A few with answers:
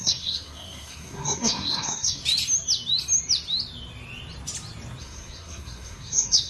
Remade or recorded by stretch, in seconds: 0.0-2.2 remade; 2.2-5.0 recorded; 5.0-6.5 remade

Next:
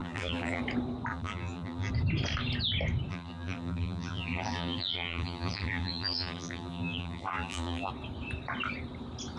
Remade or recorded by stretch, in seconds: 0.0-0.6 remade; 0.6-1.1 recorded; 1.1-1.9 remade; 1.9-3.1 recorded; 3.1-7.9 remade; 7.9-9.4 recorded